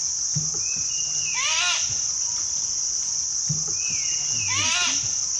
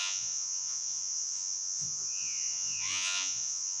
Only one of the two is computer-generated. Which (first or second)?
second